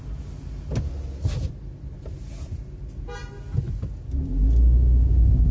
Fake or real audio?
real